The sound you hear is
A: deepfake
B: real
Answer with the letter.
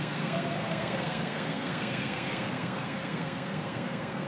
A